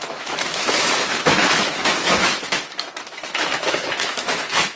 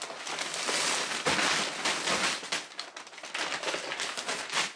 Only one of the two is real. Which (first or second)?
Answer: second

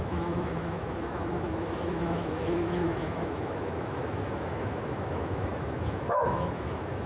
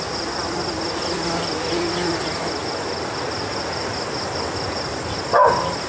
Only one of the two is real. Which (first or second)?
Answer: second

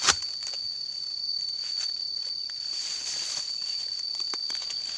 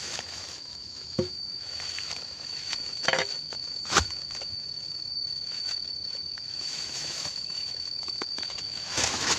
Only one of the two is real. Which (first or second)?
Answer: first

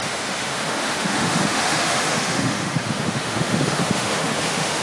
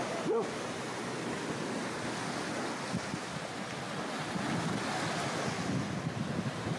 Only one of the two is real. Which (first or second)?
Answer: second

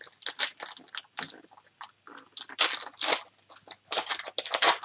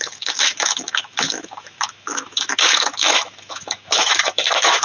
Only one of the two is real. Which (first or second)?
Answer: first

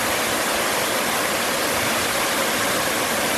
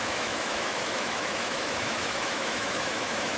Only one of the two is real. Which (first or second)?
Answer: first